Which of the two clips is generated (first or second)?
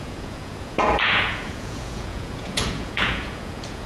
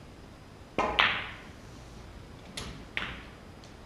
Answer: first